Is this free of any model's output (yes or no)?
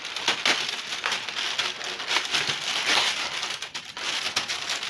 yes